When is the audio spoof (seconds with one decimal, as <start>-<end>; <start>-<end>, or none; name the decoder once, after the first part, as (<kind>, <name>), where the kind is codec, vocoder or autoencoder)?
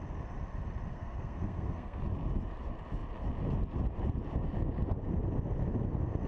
0.9-2.0 (codec, SNAC)